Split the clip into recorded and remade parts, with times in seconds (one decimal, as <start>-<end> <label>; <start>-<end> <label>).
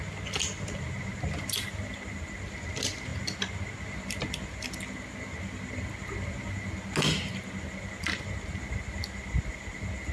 0.0-10.1 recorded